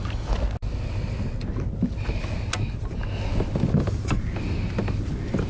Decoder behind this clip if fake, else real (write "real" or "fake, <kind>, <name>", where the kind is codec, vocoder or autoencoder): real